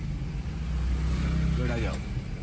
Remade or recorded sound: recorded